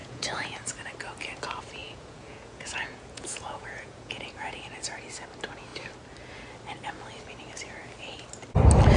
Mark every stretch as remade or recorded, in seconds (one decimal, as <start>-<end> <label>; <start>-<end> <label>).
0.0-0.6 remade; 0.6-1.8 recorded; 1.8-4.6 remade; 4.6-9.0 recorded